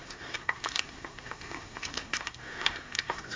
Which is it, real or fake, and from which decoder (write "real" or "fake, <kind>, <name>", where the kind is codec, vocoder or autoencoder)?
fake, codec, SNAC